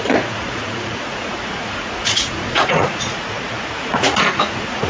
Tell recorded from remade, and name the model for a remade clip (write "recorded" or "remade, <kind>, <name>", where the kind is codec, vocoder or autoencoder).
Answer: remade, vocoder, Vocos